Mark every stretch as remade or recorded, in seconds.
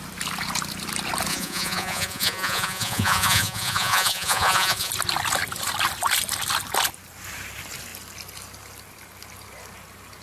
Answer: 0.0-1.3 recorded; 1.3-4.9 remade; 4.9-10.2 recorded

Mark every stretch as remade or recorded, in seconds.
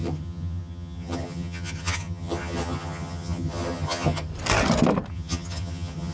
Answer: 0.0-4.3 remade; 4.3-5.1 recorded; 5.1-6.1 remade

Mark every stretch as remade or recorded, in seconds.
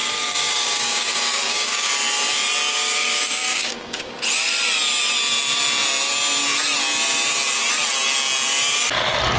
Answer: 0.0-1.9 remade; 1.9-2.7 recorded; 2.7-4.1 remade; 4.1-9.4 recorded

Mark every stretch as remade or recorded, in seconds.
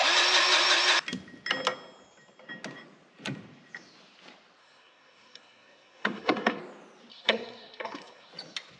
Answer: 0.0-4.6 recorded; 4.6-6.6 remade; 6.6-7.1 recorded; 7.1-8.3 remade; 8.3-8.8 recorded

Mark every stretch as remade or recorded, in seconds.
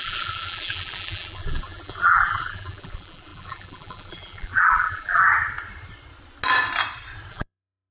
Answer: 0.0-5.2 remade; 5.2-7.3 recorded; 7.3-7.9 remade